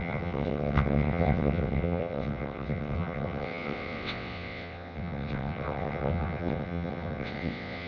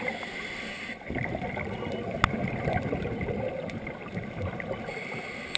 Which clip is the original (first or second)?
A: second